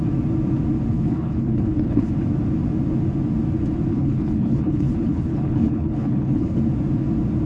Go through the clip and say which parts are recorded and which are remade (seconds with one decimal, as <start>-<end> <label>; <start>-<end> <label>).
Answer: 0.0-0.9 recorded; 0.9-2.1 remade; 2.1-3.9 recorded; 3.9-6.6 remade; 6.6-7.5 recorded